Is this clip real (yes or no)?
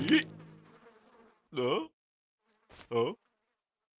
yes